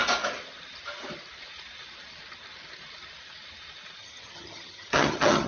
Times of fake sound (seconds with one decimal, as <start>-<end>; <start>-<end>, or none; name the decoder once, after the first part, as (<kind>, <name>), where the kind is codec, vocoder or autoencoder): 4.0-5.5 (vocoder, HiFi-GAN)